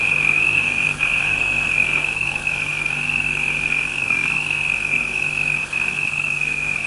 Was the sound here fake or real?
fake